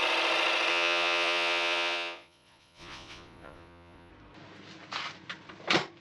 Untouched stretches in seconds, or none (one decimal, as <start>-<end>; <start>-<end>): 0.0-0.7; 4.1-6.0